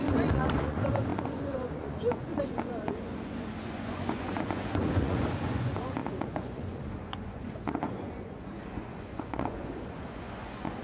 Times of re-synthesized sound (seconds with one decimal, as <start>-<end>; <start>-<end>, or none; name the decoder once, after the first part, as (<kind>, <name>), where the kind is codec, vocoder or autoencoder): 0.0-10.8 (vocoder, Vocos)